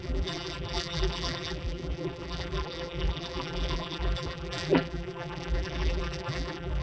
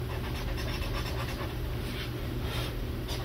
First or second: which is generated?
first